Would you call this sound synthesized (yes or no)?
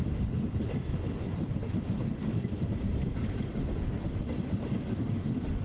no